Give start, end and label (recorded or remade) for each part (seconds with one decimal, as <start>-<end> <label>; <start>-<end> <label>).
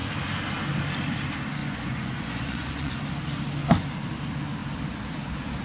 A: 0.0-1.6 recorded; 1.6-3.0 remade; 3.0-5.6 recorded